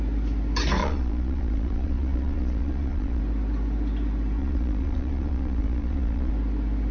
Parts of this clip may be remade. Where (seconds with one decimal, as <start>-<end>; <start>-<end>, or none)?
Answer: 0.8-3.2; 4.4-6.3